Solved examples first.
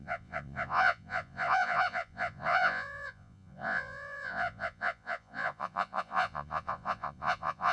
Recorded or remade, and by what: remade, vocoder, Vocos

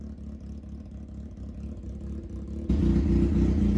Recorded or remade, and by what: recorded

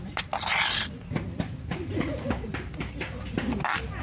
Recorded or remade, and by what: recorded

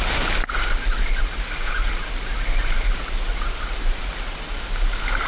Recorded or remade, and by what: recorded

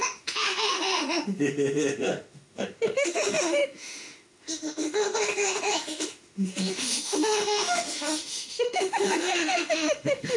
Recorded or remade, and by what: remade, autoencoder, DAC-VAE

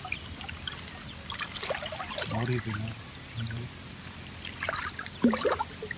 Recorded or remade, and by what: recorded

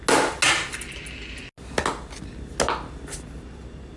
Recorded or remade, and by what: recorded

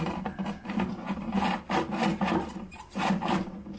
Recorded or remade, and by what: recorded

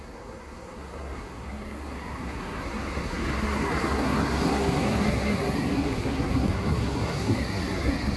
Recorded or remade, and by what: remade, codec, SNAC